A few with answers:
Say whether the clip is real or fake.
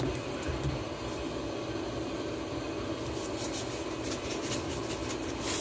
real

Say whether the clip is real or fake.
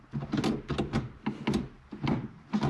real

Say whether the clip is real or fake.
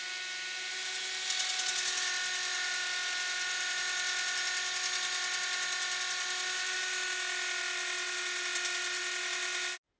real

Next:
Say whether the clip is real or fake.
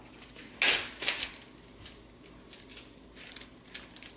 real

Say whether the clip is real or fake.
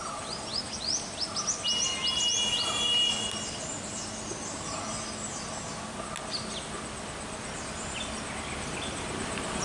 real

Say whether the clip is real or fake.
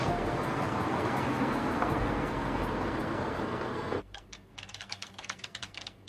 fake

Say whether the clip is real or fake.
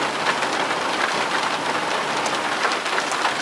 real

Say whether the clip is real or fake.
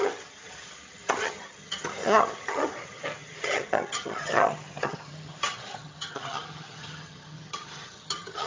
fake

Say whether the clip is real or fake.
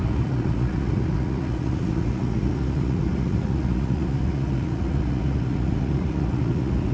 fake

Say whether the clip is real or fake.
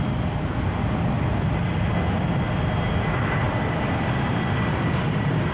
real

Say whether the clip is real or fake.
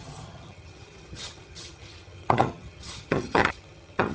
fake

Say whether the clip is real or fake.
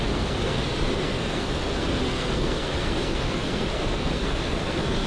fake